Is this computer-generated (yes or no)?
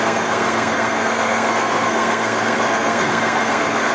yes